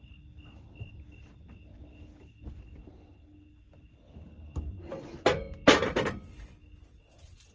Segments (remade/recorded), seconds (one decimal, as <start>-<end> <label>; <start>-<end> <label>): 0.0-7.5 recorded